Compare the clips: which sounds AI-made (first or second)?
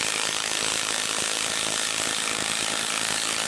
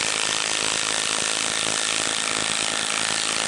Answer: first